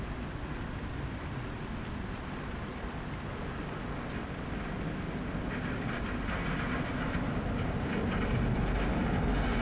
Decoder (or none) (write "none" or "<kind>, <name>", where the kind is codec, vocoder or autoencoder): none